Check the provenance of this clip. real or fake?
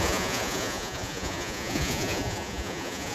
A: fake